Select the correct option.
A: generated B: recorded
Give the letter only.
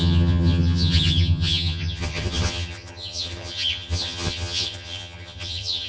A